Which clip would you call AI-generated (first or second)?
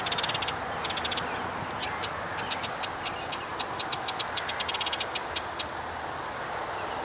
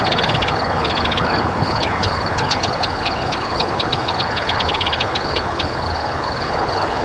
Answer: second